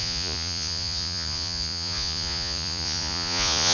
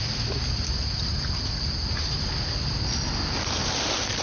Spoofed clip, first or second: first